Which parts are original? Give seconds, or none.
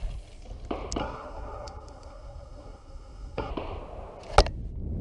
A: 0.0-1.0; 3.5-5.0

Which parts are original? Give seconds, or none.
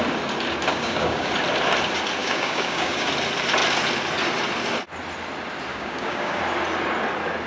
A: 0.0-0.7; 1.3-2.2; 3.1-5.7; 6.4-7.5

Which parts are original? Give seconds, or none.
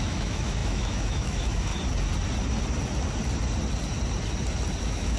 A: 1.7-4.8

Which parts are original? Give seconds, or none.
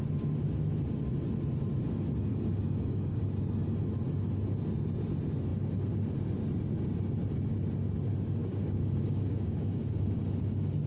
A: 0.0-2.3; 3.2-8.4; 10.2-10.9